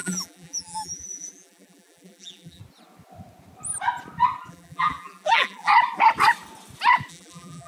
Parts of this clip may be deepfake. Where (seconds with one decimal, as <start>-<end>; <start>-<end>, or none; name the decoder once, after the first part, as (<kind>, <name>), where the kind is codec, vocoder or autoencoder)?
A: 0.0-2.6 (vocoder, BigVGAN v2); 4.5-5.7; 7.1-7.7